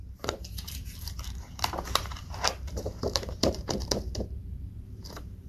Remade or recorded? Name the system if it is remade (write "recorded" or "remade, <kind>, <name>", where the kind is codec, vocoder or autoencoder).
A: remade, vocoder, BigVGAN v2